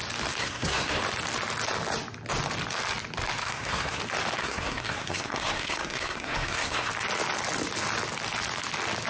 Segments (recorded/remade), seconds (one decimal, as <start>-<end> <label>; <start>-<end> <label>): 0.0-0.4 recorded; 0.4-1.0 remade; 1.0-3.4 recorded; 3.4-4.0 remade; 4.0-4.4 recorded; 4.4-6.9 remade; 6.9-9.1 recorded